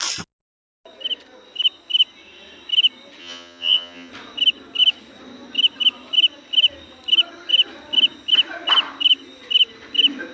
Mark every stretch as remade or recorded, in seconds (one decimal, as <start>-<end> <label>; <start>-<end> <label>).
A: 0.0-3.2 recorded; 3.2-4.1 remade; 4.1-10.3 recorded